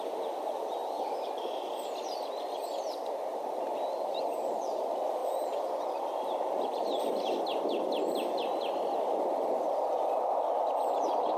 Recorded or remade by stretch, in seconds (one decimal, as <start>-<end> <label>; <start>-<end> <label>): 0.0-11.4 recorded

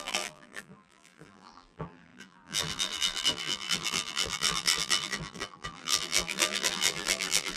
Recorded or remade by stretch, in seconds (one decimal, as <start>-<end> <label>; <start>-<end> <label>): 0.0-7.6 remade

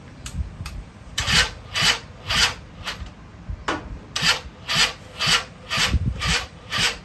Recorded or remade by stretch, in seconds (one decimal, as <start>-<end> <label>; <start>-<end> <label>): 0.0-2.4 remade; 2.4-5.8 recorded; 5.8-7.0 remade

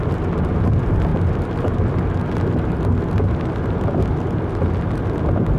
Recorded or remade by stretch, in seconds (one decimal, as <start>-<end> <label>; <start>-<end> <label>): 0.0-1.1 recorded; 1.1-1.8 remade; 1.8-5.6 recorded